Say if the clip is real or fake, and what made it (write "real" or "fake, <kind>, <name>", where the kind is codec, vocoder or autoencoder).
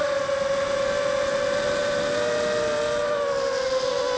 real